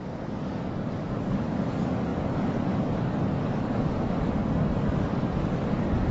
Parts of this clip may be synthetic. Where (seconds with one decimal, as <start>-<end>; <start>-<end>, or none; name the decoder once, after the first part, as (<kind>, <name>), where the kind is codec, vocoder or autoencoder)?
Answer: 0.0-6.1 (codec, DAC)

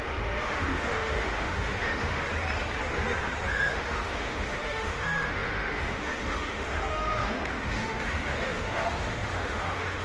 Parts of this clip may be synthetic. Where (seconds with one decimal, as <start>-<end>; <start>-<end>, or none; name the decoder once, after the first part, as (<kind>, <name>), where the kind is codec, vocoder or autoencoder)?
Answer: 0.0-2.3 (autoencoder, DAC-VAE); 3.5-10.0

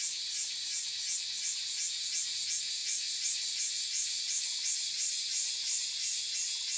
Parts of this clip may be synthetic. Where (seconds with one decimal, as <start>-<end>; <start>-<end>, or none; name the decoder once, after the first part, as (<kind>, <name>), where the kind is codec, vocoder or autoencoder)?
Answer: 2.8-6.3 (vocoder, Vocos)

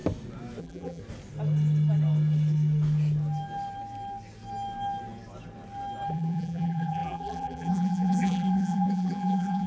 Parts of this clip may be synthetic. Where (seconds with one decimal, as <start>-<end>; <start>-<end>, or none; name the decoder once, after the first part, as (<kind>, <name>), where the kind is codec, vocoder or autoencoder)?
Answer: 0.6-1.0 (vocoder, BigVGAN v2); 6.1-9.7

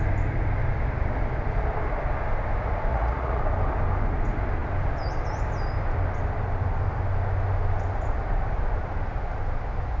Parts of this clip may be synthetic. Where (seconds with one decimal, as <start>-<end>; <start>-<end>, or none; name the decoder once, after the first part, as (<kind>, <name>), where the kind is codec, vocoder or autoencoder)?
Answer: 2.9-3.4 (vocoder, Vocos)

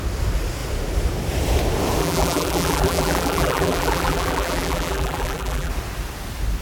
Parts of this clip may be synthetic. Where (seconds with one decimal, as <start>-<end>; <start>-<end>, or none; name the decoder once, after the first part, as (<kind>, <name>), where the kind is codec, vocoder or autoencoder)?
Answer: 2.0-5.7 (vocoder, BigVGAN v2)

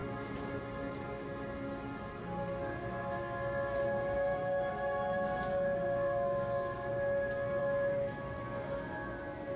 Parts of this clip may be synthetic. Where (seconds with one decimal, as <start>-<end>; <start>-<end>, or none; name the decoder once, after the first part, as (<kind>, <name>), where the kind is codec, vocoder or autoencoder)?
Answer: 4.3-6.9 (codec, DAC); 7.6-8.4